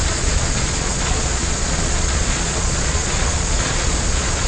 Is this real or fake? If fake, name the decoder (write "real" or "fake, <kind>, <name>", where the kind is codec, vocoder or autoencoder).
fake, vocoder, Vocos